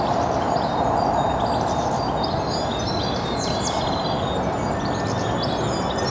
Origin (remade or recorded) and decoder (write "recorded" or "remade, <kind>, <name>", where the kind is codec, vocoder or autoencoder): recorded